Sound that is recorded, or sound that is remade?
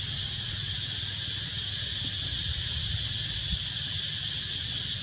recorded